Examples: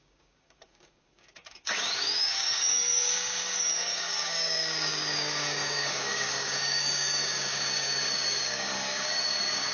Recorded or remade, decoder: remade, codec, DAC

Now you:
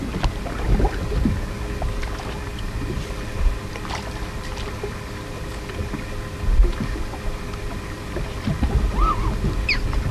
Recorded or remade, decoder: recorded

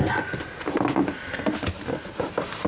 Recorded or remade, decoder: recorded